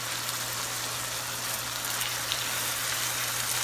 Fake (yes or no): no